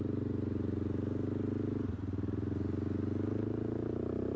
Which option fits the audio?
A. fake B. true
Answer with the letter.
B